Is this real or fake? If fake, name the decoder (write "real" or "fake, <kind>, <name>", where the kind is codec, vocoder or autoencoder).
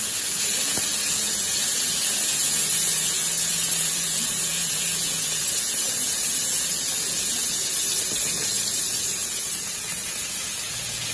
fake, vocoder, Vocos